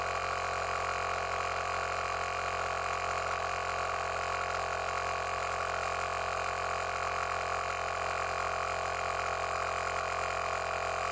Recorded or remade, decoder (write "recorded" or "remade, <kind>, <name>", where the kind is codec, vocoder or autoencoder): recorded